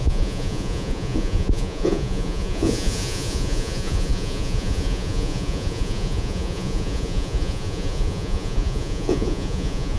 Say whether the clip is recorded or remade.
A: remade